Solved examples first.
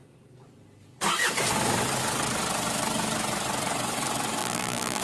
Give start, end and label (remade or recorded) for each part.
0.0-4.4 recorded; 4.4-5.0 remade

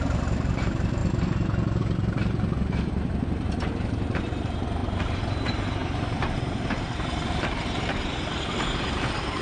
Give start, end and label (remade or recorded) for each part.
0.0-1.0 remade; 1.0-1.8 recorded; 1.8-4.8 remade; 4.8-5.3 recorded; 5.3-9.4 remade

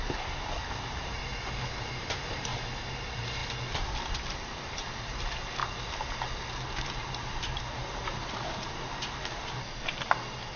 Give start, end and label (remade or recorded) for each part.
0.0-1.3 remade; 1.3-1.8 recorded; 1.8-2.5 remade; 2.5-3.0 recorded; 3.0-3.4 remade; 3.4-4.4 recorded; 4.4-10.6 remade

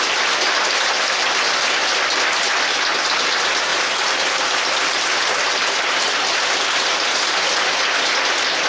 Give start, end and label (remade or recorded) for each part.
0.0-3.7 recorded; 3.7-7.1 remade; 7.1-8.7 recorded

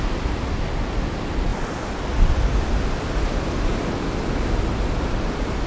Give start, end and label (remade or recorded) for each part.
0.0-5.7 recorded

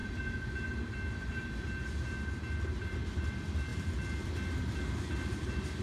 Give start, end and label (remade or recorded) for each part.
0.0-5.8 recorded

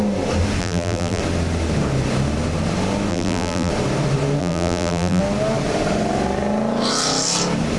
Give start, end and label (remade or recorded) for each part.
0.0-0.6 recorded; 0.6-1.2 remade; 1.2-3.1 recorded; 3.1-3.7 remade; 3.7-4.4 recorded; 4.4-5.2 remade; 5.2-7.8 recorded